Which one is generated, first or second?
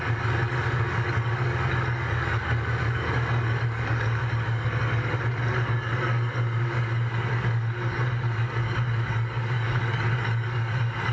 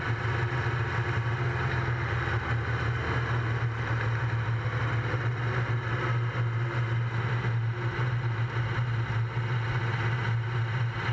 first